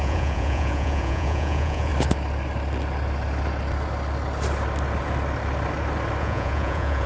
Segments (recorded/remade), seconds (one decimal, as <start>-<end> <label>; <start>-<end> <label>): 0.0-1.9 remade; 1.9-6.2 recorded; 6.2-7.1 remade